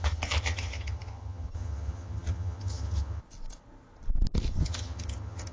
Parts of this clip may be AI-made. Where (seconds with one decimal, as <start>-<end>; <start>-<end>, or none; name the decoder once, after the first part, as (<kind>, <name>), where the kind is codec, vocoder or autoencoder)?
0.0-3.2 (vocoder, HiFi-GAN); 4.6-5.5